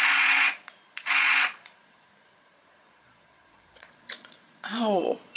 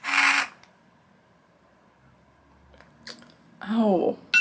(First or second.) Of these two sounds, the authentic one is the second